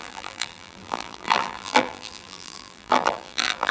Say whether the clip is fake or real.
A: fake